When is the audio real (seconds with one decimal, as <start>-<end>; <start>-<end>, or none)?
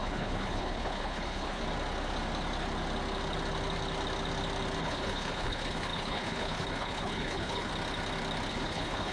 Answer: 1.6-4.8; 7.7-8.5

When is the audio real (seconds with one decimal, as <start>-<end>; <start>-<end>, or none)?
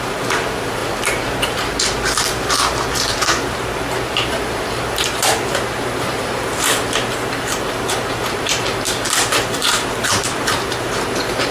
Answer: none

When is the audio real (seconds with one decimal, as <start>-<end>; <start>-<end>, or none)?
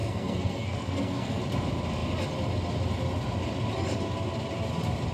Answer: 1.4-5.1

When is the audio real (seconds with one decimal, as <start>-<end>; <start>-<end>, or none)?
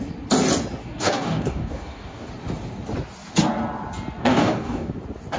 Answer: 0.0-0.8; 2.3-4.2; 4.9-5.4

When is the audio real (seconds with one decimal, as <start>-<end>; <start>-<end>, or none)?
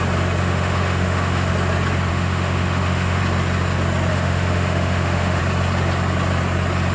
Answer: 0.0-0.4; 1.5-2.1; 3.2-4.1; 5.4-6.9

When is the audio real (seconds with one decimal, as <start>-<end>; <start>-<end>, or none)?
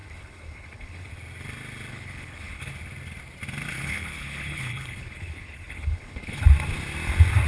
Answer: 1.1-1.9; 2.7-3.7; 6.4-7.5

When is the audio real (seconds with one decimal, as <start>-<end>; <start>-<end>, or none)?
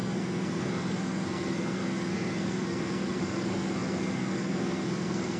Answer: none